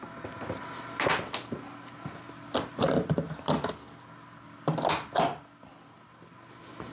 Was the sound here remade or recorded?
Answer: recorded